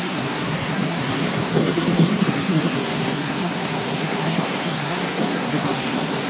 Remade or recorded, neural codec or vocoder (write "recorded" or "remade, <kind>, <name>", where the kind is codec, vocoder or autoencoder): remade, codec, SNAC